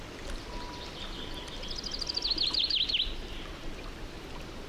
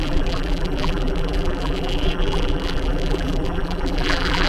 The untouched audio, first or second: first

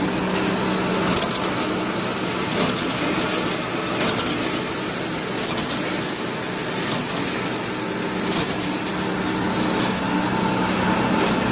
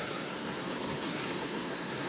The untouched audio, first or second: first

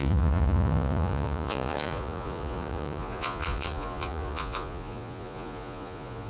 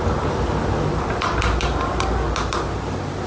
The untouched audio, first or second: second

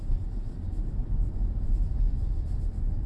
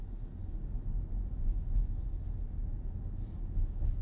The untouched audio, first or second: second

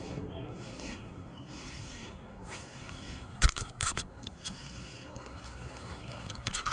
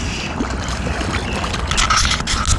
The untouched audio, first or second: second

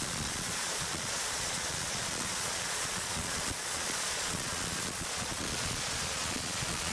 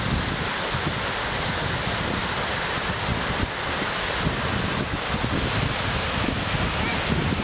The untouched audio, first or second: second